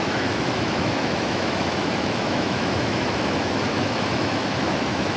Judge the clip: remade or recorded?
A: remade